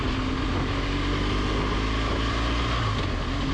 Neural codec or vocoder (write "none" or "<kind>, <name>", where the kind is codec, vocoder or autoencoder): none